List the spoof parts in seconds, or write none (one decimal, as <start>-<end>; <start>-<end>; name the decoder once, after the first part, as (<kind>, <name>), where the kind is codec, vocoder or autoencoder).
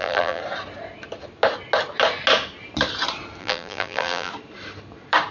0.0-0.4 (vocoder, BigVGAN v2); 3.4-4.3